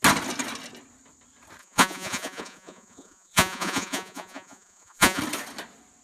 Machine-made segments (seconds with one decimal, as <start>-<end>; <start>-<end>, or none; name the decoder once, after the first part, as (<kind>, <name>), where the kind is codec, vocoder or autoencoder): 1.6-5.2 (vocoder, Vocos)